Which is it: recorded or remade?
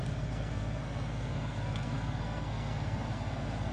remade